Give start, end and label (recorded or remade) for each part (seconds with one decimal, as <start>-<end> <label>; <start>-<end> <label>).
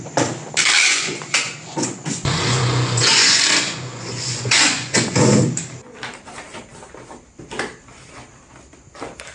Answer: 0.0-0.9 recorded; 0.9-5.4 remade; 5.4-9.3 recorded